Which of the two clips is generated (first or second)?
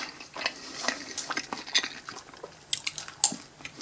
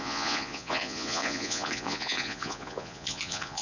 second